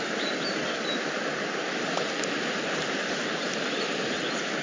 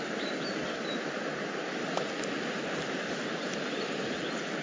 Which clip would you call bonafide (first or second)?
second